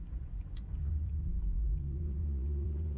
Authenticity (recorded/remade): remade